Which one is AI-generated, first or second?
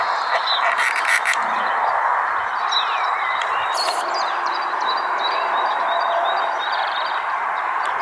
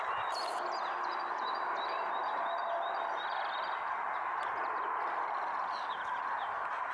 first